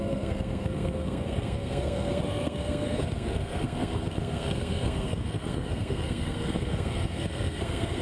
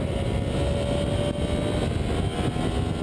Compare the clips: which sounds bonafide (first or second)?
second